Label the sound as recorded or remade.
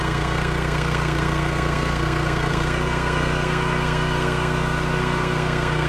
remade